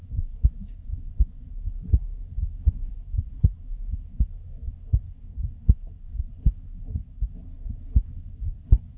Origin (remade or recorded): remade